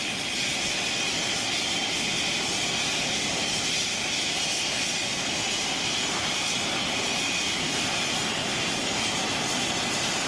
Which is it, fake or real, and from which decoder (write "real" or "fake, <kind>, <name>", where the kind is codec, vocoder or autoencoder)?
real